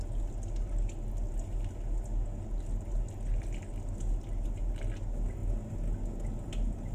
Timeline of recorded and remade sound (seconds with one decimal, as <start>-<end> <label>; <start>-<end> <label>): 0.0-6.9 recorded